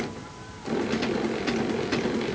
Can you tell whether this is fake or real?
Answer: real